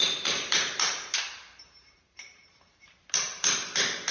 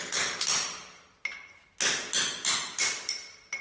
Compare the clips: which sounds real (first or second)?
second